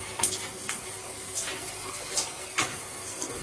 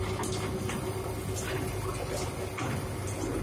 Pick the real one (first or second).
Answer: second